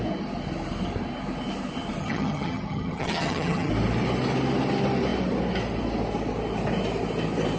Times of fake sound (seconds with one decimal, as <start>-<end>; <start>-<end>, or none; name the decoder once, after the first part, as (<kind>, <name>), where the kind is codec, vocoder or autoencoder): 2.0-3.7 (vocoder, HiFi-GAN)